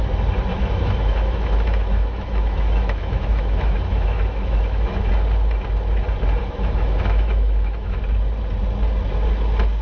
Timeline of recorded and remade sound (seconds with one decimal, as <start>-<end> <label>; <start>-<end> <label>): 0.0-0.5 recorded; 0.5-5.1 remade; 5.1-6.4 recorded; 6.4-8.0 remade; 8.0-9.8 recorded